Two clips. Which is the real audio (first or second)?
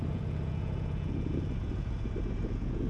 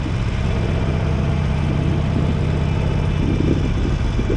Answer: second